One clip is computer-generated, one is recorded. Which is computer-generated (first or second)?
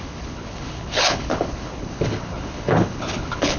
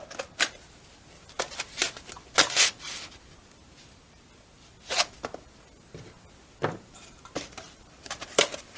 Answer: first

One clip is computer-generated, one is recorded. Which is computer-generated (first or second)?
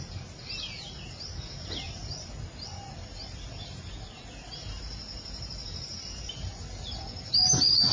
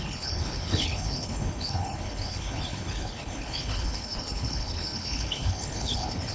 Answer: second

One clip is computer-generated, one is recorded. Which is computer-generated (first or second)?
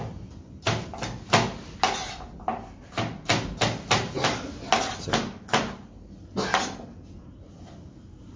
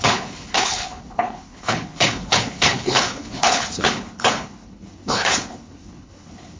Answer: second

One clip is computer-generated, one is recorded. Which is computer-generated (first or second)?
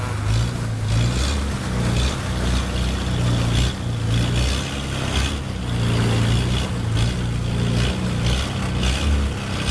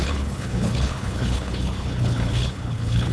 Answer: second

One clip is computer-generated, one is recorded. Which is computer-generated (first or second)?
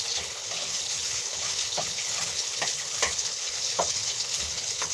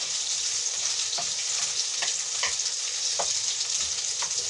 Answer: first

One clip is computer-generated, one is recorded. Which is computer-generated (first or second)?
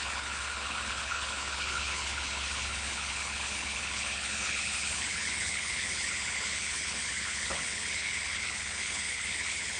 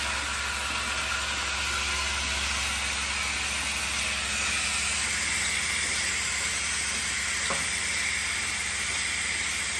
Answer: first